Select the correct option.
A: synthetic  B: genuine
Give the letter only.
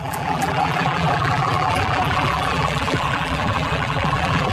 A